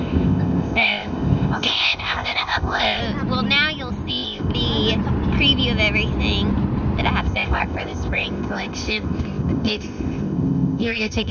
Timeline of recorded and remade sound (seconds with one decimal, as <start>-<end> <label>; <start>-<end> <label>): 0.0-3.0 remade; 3.0-4.1 recorded; 4.1-4.5 remade; 4.5-7.2 recorded; 7.2-11.3 remade